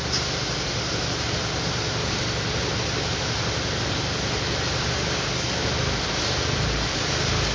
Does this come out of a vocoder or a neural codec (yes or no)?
no